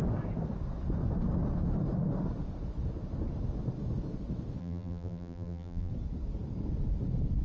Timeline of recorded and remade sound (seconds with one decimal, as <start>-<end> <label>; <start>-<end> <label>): 0.0-4.6 recorded; 4.6-5.9 remade; 5.9-7.4 recorded

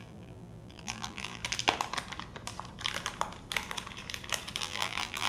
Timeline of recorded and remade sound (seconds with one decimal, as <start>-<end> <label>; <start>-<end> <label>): 0.0-1.4 remade; 1.4-4.6 recorded; 4.6-5.3 remade